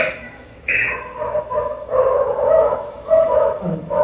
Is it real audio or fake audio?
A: fake